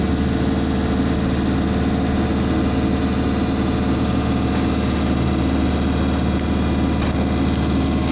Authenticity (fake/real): real